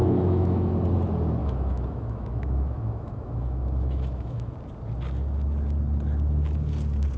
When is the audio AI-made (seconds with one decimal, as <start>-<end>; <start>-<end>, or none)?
0.0-0.7; 1.4-4.5